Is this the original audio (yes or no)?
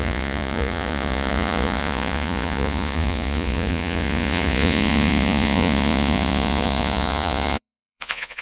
no